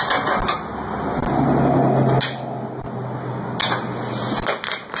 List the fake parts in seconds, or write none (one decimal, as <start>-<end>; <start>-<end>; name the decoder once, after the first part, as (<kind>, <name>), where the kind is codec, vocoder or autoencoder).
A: none